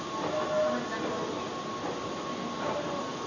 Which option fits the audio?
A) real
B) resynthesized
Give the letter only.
A